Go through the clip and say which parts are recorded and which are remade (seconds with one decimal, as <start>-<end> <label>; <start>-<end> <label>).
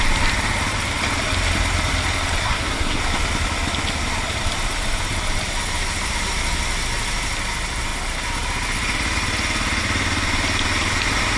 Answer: 0.0-2.4 recorded; 2.4-3.0 remade; 3.0-11.4 recorded